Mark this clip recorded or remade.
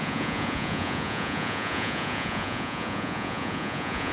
remade